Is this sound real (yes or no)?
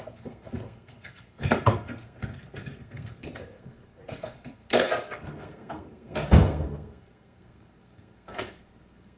no